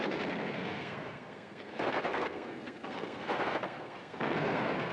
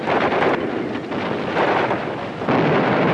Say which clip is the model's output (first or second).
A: first